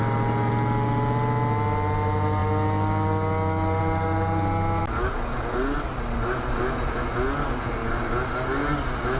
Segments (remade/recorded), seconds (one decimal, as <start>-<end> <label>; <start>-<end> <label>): 0.0-9.2 recorded